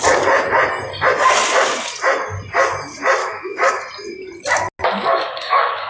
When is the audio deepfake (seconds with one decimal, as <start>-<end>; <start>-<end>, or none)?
3.2-3.7; 4.8-5.9